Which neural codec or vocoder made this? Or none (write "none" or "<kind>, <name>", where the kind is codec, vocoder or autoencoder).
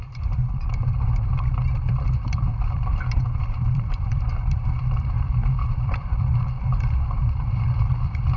vocoder, BigVGAN v2